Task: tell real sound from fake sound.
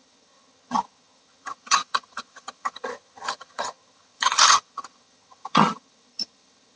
fake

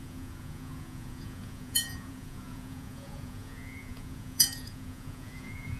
fake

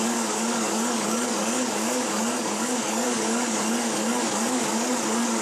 fake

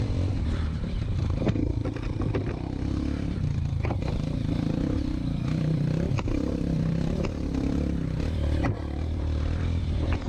fake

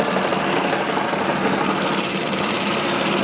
real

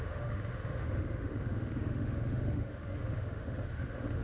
fake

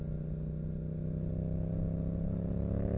real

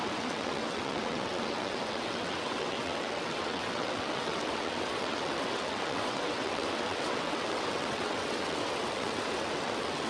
fake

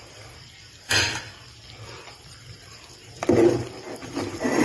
fake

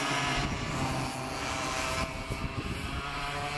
real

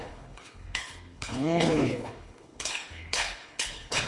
fake